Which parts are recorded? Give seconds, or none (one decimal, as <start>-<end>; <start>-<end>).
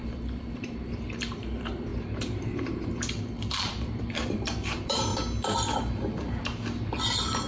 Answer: 0.0-0.5; 5.1-7.1